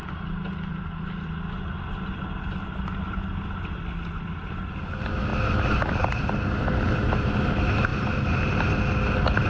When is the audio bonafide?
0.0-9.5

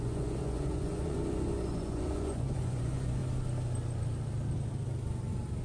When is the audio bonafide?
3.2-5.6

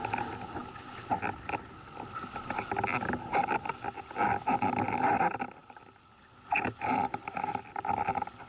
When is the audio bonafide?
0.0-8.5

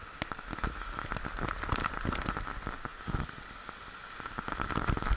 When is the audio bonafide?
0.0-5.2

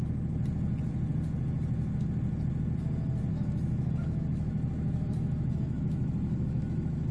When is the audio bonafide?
0.0-3.3